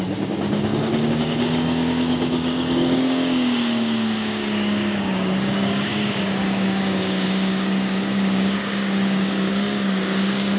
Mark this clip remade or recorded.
remade